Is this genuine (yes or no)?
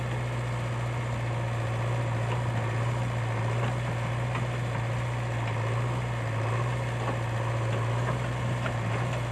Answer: yes